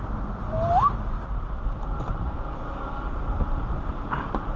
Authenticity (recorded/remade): recorded